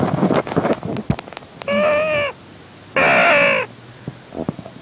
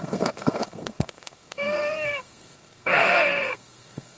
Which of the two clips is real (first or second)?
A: first